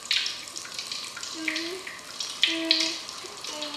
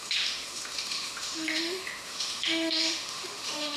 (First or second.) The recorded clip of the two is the first